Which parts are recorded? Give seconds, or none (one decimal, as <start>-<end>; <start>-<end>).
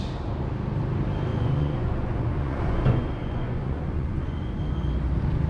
0.0-1.3; 4.6-5.5